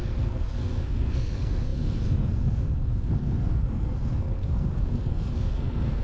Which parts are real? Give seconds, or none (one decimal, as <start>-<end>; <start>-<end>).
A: none